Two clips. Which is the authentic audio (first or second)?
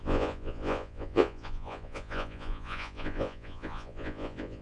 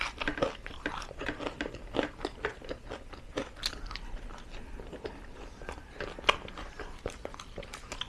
second